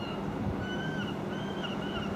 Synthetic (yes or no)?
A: no